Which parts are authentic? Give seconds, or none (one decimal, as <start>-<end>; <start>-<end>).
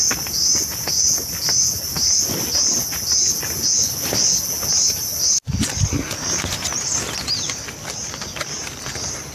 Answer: 0.0-9.3